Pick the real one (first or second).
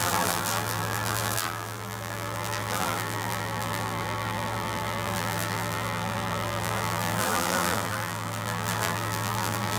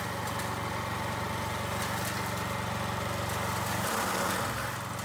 second